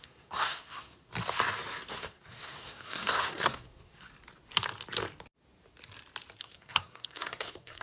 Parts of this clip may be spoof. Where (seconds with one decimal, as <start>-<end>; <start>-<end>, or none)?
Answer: 0.0-1.1; 1.9-4.1; 6.4-7.8